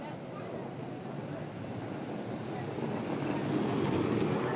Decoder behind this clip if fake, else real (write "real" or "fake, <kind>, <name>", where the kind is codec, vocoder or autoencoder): real